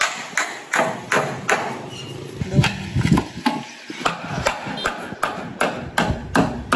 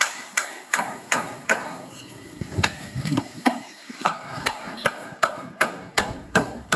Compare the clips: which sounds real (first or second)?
first